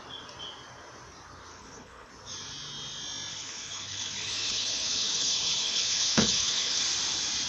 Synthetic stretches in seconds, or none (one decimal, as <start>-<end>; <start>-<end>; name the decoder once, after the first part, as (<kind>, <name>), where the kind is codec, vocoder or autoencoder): 1.5-2.1 (codec, HILCodec); 3.3-6.8